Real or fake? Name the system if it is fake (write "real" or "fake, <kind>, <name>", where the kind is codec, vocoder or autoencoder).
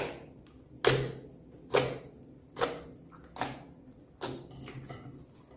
real